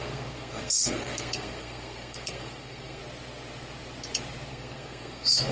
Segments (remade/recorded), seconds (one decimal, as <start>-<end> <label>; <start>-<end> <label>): 0.0-3.0 remade; 3.0-4.5 recorded; 4.5-5.5 remade